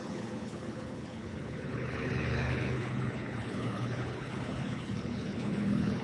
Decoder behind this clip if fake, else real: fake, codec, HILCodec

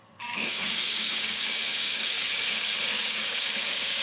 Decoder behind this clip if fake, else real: fake, codec, DAC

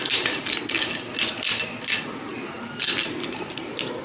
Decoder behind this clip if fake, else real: real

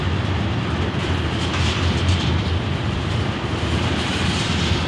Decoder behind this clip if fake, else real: fake, vocoder, BigVGAN v2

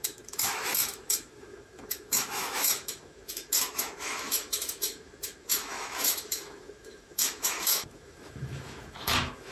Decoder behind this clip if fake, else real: fake, autoencoder, DAC-VAE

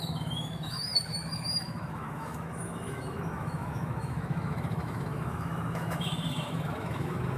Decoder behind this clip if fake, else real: fake, autoencoder, DAC-VAE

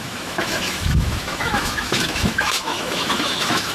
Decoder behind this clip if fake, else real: fake, autoencoder, DAC-VAE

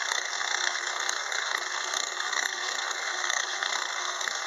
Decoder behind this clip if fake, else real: fake, codec, SNAC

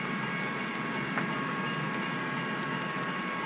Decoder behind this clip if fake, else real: real